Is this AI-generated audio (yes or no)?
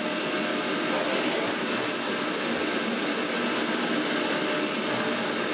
no